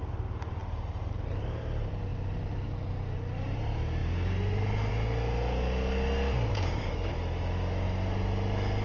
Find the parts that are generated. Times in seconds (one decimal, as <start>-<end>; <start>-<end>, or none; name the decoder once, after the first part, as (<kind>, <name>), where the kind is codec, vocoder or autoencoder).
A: 6.5-7.1 (codec, DAC)